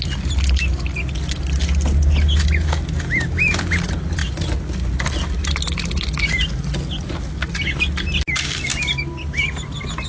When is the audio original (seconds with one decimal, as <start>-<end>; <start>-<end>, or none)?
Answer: 0.0-10.1